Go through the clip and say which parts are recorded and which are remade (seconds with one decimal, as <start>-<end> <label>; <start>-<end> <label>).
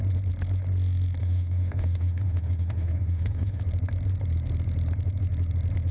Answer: 0.0-1.2 recorded; 1.2-3.6 remade; 3.6-5.9 recorded